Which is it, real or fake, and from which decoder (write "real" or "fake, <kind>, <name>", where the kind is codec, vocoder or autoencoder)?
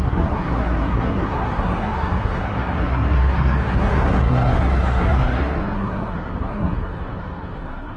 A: fake, codec, SNAC